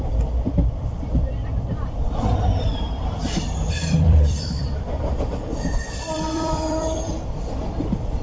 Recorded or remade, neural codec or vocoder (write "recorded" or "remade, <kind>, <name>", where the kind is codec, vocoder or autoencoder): remade, vocoder, BigVGAN v2